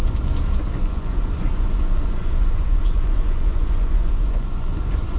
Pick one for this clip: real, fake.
fake